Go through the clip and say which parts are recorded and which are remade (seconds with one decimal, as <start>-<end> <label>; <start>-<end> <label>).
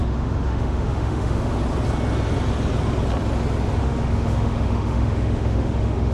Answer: 0.0-1.6 remade; 1.6-3.8 recorded; 3.8-6.1 remade